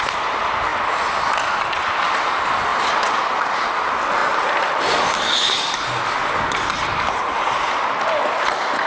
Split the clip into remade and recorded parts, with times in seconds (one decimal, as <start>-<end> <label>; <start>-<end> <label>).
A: 0.0-8.9 recorded